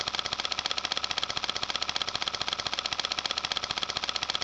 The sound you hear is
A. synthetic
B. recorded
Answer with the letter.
B